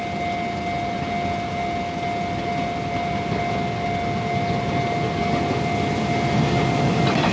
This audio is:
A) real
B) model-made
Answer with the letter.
A